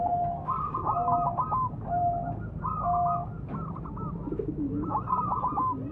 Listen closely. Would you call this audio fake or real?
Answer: real